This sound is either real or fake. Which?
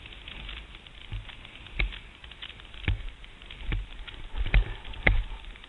real